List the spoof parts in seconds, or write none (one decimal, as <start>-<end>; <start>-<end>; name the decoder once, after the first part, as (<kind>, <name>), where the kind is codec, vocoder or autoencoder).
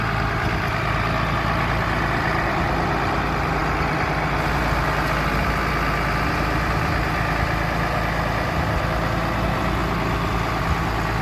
none